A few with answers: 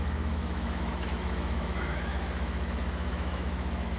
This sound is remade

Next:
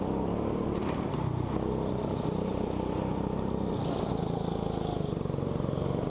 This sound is recorded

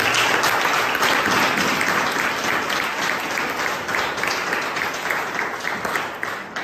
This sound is recorded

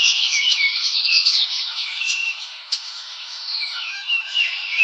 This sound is remade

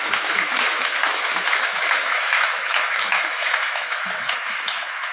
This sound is remade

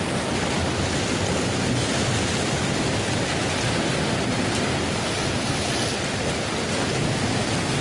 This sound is recorded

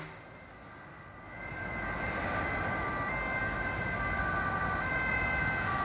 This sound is recorded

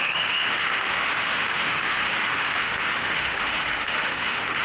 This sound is remade